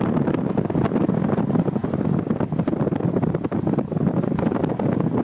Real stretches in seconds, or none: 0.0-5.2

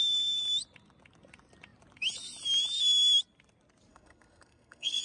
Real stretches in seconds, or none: 0.0-3.9